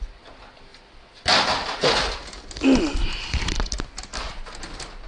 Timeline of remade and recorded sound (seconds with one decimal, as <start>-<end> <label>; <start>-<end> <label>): 0.0-5.1 recorded